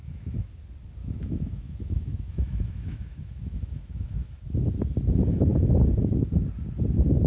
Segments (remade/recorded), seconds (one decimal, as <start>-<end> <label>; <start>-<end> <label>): 0.0-0.5 remade; 0.5-1.0 recorded; 1.0-4.3 remade; 4.3-7.3 recorded